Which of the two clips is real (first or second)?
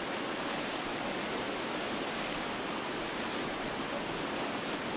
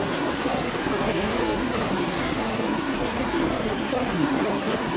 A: first